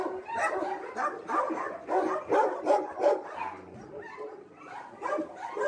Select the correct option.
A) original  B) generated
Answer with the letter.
A